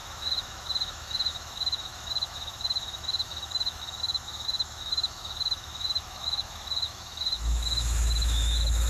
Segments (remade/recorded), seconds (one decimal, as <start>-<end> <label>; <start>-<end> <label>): 0.0-8.9 remade